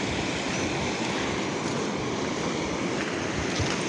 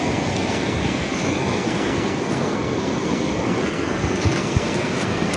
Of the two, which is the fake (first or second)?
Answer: second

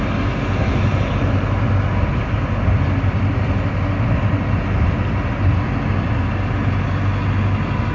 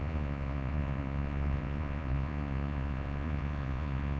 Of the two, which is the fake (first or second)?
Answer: second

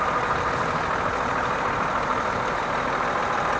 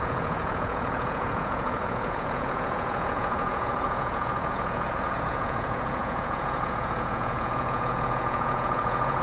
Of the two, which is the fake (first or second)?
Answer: second